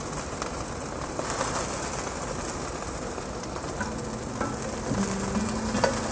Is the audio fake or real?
real